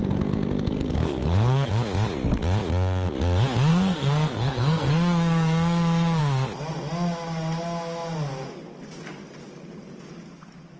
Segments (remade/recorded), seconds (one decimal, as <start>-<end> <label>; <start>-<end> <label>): 0.0-1.7 remade; 1.7-3.7 recorded; 3.7-6.2 remade; 6.2-10.8 recorded